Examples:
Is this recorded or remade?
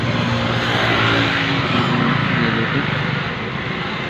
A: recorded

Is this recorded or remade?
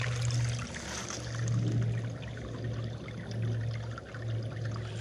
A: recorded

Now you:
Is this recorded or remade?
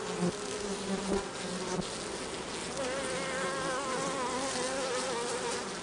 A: recorded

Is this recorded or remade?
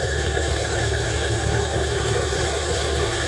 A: remade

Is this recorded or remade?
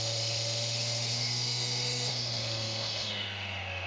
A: remade